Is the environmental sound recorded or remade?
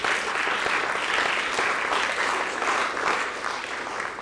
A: recorded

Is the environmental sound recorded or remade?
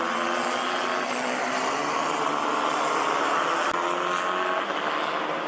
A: recorded